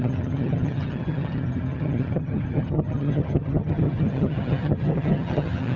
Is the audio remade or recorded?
remade